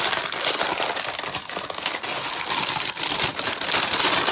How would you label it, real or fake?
real